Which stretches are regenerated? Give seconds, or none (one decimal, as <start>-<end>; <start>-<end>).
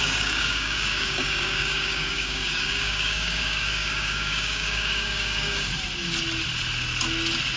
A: 0.0-5.7